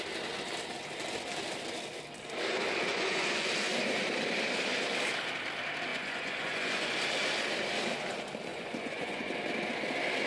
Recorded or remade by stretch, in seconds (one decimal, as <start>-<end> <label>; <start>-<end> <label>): 0.0-2.9 recorded; 2.9-3.5 remade; 3.5-5.9 recorded; 5.9-6.9 remade; 6.9-8.5 recorded; 8.5-9.3 remade; 9.3-10.3 recorded